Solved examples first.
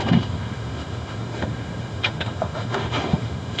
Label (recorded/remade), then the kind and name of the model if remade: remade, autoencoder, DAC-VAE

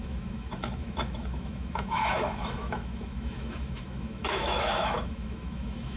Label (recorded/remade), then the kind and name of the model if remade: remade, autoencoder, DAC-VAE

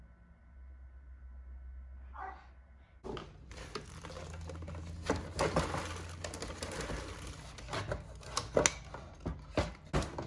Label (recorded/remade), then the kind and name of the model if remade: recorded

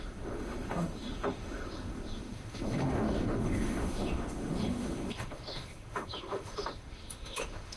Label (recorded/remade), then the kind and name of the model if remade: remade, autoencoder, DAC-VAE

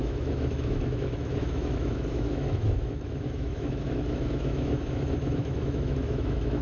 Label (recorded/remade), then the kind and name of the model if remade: remade, autoencoder, DAC-VAE